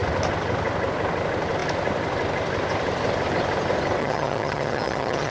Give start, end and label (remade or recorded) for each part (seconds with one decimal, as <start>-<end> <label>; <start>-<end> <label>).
0.0-4.0 recorded; 4.0-5.3 remade